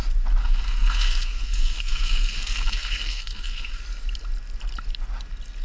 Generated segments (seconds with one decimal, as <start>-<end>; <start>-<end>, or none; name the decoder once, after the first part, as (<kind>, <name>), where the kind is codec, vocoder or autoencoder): 0.4-3.8 (codec, SNAC)